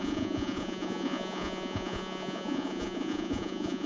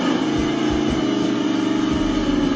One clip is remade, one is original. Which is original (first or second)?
second